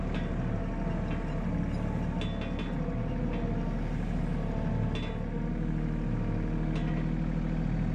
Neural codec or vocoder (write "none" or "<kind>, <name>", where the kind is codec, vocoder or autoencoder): none